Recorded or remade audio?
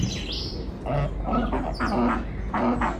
recorded